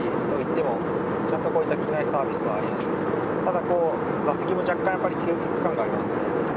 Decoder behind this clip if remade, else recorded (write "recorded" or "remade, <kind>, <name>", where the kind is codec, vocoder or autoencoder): recorded